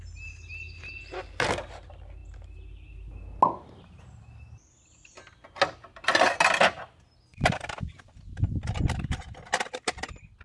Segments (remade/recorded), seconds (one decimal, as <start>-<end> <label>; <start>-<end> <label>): 0.0-10.4 recorded